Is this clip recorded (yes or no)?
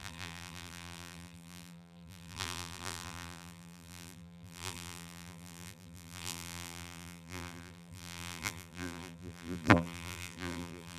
no